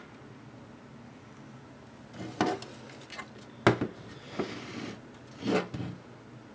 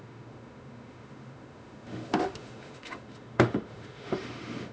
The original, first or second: first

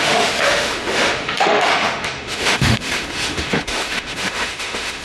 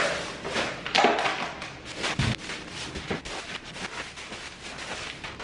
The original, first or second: second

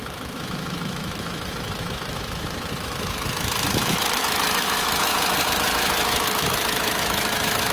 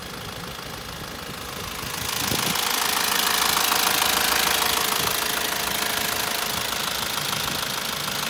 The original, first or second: second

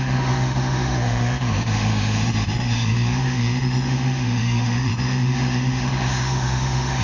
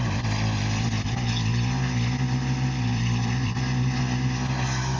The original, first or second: second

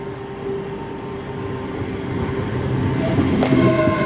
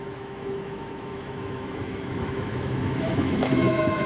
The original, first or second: first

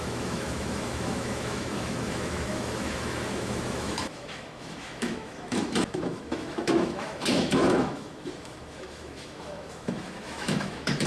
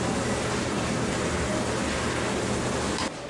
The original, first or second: second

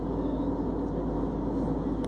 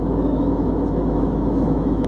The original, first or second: first